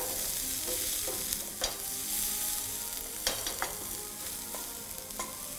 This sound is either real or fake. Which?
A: real